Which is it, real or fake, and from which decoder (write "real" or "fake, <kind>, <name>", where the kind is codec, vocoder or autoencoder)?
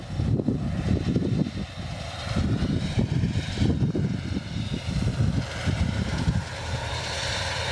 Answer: fake, vocoder, BigVGAN v2